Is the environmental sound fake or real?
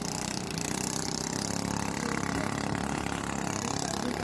real